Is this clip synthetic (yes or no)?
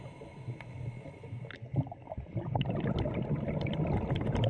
no